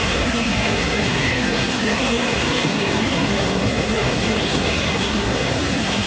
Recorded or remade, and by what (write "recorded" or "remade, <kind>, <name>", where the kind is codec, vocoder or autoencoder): remade, codec, SNAC